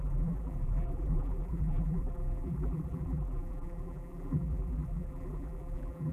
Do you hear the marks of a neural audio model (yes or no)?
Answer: yes